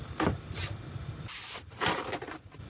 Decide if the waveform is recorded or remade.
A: recorded